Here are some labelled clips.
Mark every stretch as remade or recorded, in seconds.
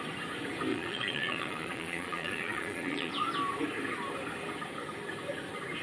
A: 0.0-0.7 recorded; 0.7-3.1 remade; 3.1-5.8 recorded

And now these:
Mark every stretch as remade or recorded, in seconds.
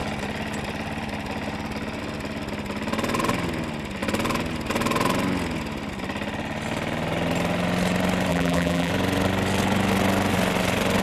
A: 0.0-8.3 recorded; 8.3-8.9 remade; 8.9-11.0 recorded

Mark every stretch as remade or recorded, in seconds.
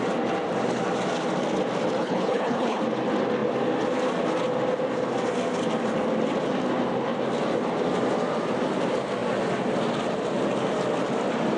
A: 0.0-2.0 recorded; 2.0-2.8 remade; 2.8-11.6 recorded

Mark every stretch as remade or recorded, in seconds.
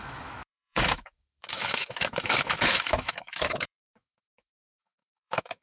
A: 0.0-5.6 remade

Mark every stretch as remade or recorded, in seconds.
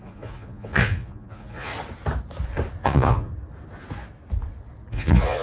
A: 0.0-1.7 remade; 1.7-2.8 recorded; 2.8-3.3 remade; 3.3-4.9 recorded; 4.9-5.4 remade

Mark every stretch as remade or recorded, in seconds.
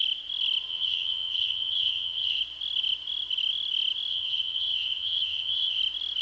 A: 0.0-0.7 recorded; 0.7-2.4 remade; 2.4-4.1 recorded; 4.1-5.8 remade; 5.8-6.2 recorded